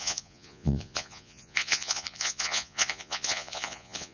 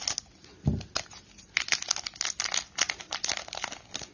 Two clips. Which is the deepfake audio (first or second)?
first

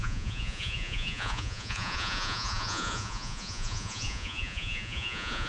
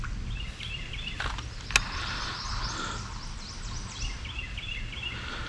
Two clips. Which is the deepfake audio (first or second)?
first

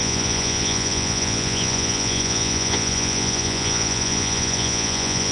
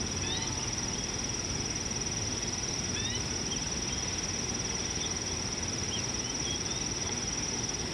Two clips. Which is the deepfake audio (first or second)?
first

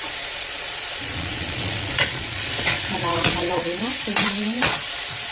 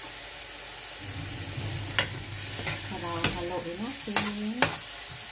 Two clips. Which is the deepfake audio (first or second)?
first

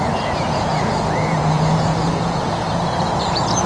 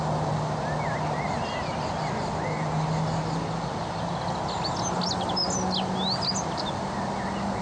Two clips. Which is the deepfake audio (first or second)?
first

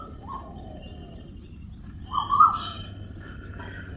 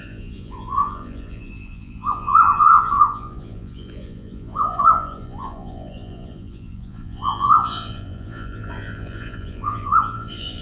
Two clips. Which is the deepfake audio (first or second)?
second